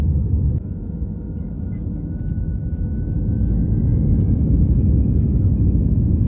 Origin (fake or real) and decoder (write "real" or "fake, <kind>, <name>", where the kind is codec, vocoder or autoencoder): fake, autoencoder, DAC-VAE